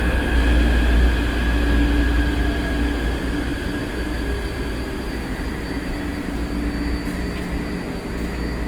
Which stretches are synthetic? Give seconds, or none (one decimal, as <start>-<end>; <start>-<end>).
none